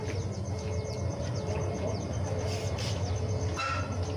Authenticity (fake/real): real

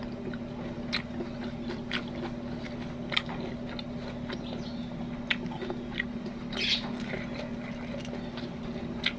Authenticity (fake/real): real